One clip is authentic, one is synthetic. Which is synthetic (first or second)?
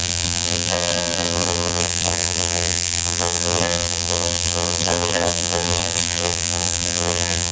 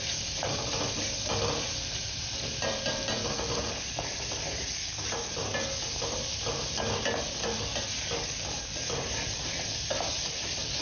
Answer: first